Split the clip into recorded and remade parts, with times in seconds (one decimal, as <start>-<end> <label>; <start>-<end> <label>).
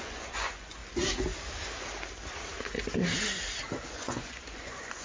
0.0-0.8 remade; 0.8-3.8 recorded; 3.8-5.0 remade